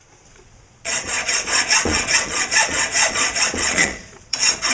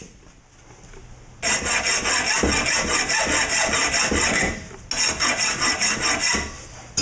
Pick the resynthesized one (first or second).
first